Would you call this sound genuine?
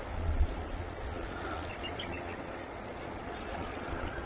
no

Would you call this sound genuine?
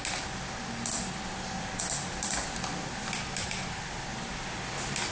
yes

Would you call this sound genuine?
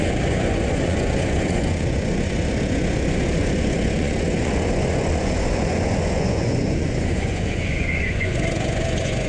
no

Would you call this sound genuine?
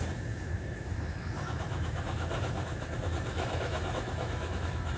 no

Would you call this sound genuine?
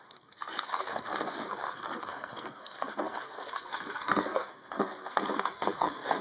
no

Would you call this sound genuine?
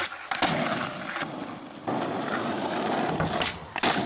yes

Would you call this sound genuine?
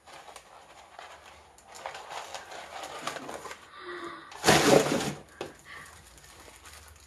yes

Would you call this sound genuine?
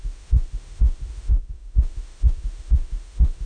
no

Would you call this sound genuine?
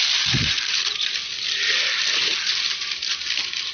yes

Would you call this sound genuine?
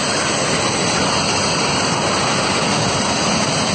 yes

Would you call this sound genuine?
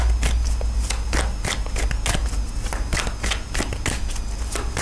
yes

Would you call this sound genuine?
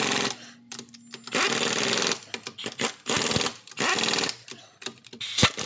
yes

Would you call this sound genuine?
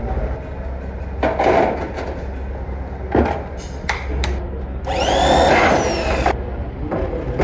yes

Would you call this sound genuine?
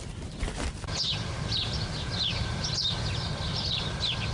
yes